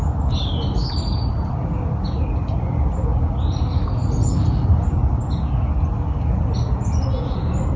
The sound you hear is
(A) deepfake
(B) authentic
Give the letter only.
B